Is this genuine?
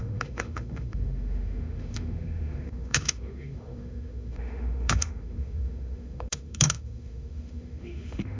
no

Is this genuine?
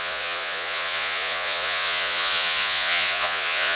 no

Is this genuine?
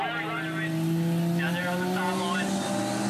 yes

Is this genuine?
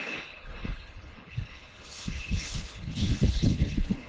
no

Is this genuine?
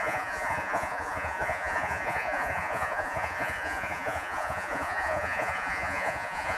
no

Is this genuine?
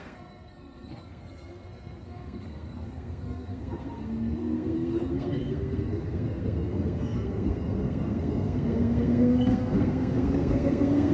no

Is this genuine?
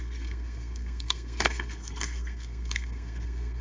no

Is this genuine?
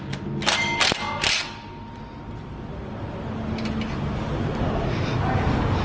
yes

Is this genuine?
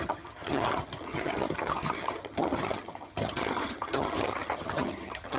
no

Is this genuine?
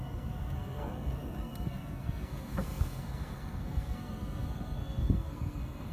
no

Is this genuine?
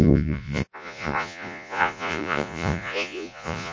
no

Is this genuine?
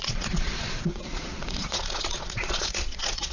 no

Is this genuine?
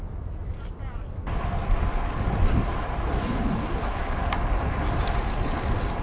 yes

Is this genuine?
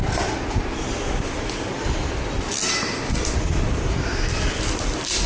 yes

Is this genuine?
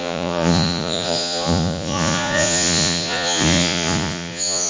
no